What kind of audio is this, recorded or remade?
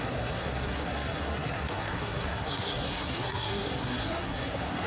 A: remade